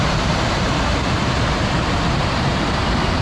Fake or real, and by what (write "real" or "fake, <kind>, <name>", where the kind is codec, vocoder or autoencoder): fake, vocoder, BigVGAN v2